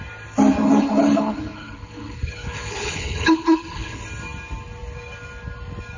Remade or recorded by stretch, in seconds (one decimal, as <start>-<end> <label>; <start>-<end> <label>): 0.0-0.6 recorded; 0.6-4.0 remade; 4.0-6.0 recorded